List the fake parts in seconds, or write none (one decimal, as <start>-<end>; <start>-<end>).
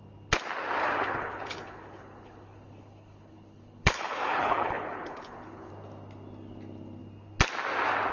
0.8-5.7